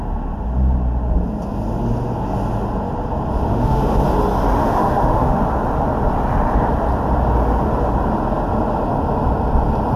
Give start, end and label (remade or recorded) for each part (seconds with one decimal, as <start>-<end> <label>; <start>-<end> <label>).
0.0-3.5 recorded; 3.5-4.0 remade; 4.0-4.6 recorded; 4.6-5.4 remade; 5.4-10.0 recorded